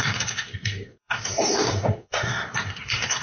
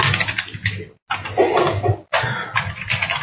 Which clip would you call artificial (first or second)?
first